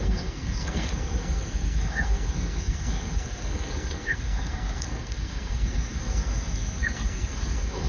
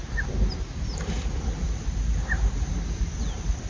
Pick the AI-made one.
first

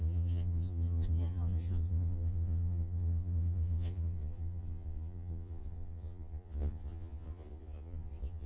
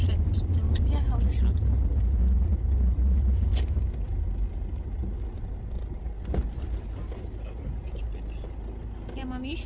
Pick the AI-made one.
first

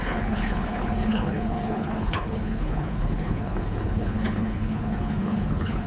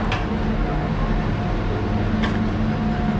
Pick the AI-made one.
first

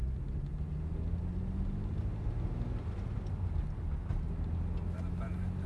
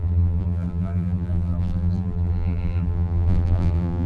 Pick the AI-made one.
second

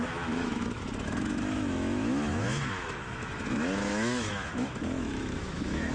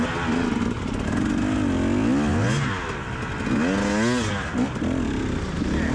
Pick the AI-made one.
first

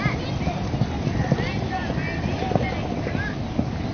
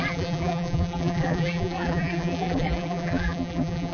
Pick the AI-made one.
second